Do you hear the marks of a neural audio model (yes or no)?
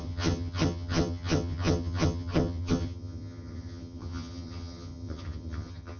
yes